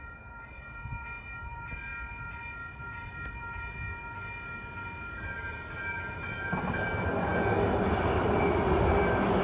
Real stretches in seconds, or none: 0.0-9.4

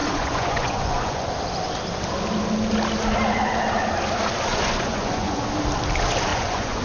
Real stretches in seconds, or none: 1.3-4.5; 5.4-6.3

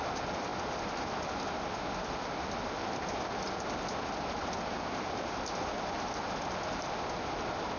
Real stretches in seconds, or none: 0.0-7.8